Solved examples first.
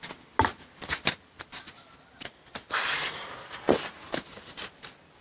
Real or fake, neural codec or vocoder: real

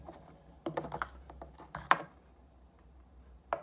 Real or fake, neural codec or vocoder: real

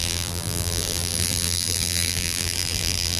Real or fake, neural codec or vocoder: fake, vocoder, BigVGAN v2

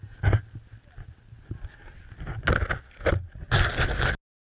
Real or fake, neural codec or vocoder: real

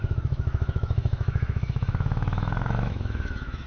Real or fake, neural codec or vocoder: fake, autoencoder, DAC-VAE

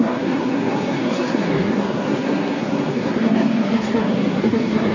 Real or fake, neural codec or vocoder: fake, codec, SNAC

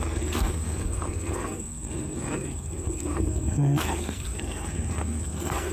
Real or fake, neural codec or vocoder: fake, codec, SNAC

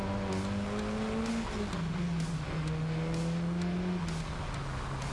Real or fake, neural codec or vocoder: real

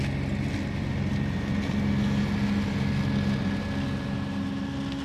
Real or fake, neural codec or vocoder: real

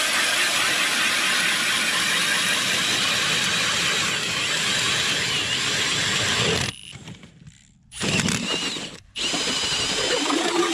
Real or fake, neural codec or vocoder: real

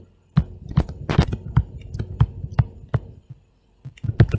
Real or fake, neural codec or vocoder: real